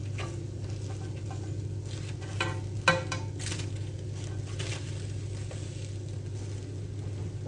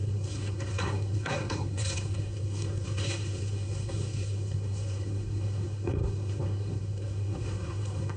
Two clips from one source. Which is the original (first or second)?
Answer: first